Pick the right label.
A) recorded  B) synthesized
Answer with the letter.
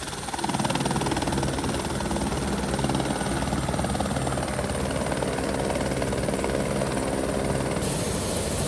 A